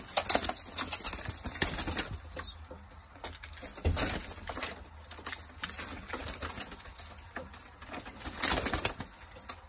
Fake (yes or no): no